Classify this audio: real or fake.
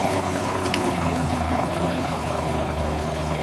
fake